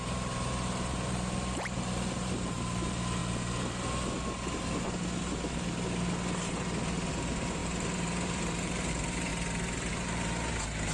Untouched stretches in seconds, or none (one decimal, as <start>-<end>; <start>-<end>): 3.2-7.1; 9.3-9.9